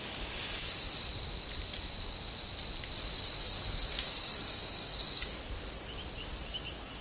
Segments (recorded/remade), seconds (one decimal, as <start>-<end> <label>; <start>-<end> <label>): 0.0-3.4 recorded; 3.4-5.4 remade; 5.4-7.0 recorded